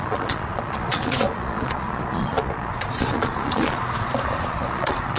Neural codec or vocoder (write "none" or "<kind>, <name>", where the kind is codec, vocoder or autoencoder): vocoder, Vocos